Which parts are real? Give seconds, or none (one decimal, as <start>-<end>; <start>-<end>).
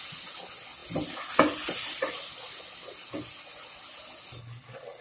0.0-5.0